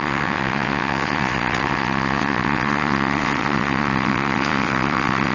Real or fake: fake